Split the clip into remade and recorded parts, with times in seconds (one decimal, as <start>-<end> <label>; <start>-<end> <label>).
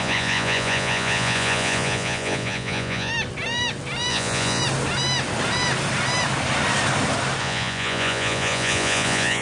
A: 0.0-3.1 remade; 3.1-4.1 recorded; 4.1-4.6 remade; 4.6-7.4 recorded; 7.4-9.4 remade